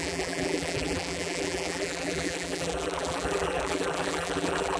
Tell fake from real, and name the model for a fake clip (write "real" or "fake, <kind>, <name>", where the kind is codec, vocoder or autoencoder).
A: fake, vocoder, BigVGAN v2